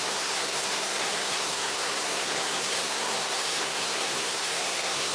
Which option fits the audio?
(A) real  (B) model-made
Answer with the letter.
B